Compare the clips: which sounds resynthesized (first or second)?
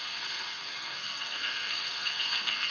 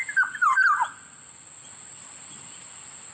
first